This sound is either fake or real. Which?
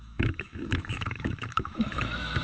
fake